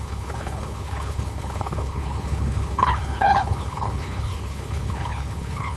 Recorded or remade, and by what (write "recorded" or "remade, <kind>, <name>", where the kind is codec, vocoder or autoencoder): remade, codec, HILCodec